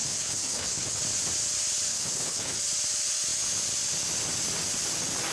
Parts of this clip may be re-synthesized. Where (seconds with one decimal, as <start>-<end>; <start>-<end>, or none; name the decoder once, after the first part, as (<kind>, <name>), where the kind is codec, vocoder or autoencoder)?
0.0-1.0 (codec, HILCodec); 1.9-2.6